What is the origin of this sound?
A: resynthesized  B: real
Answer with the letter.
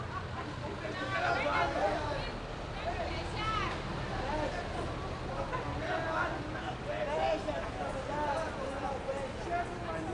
B